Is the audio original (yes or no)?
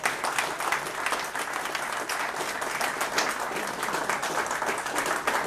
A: yes